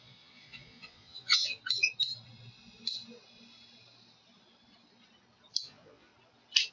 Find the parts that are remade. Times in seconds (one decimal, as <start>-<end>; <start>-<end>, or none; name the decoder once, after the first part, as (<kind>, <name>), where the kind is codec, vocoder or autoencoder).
0.0-1.6 (vocoder, Vocos); 5.6-6.1